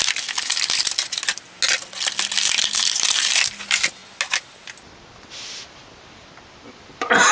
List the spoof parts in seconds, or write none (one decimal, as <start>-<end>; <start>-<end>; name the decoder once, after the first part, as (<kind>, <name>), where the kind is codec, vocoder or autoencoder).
none